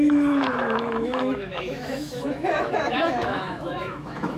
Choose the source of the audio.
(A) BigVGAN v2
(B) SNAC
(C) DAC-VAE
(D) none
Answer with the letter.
C